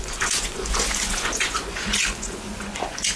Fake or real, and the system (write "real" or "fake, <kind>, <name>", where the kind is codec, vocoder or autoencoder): fake, vocoder, Vocos